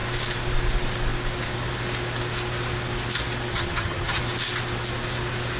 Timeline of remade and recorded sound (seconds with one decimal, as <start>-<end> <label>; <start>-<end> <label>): 0.0-3.5 recorded; 3.5-4.2 remade; 4.2-5.6 recorded